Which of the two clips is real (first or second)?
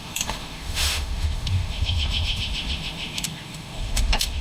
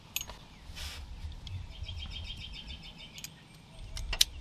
second